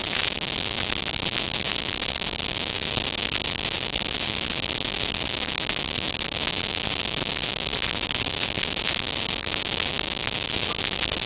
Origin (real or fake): real